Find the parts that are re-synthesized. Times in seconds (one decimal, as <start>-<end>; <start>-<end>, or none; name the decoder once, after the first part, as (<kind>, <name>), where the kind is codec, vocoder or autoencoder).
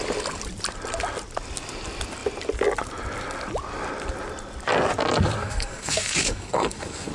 5.4-7.1 (codec, SNAC)